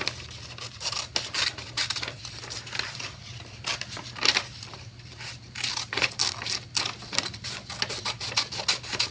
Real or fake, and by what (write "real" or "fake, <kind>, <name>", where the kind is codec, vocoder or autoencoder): real